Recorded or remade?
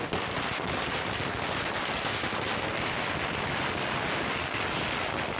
recorded